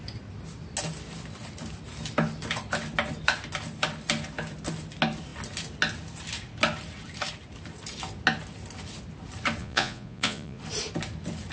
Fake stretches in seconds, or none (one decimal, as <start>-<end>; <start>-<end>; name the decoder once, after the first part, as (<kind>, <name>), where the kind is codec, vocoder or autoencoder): 9.6-10.6 (vocoder, Vocos)